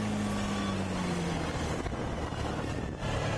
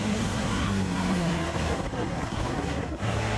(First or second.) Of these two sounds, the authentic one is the first